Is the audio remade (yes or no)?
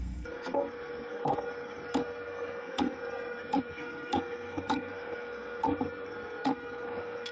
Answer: yes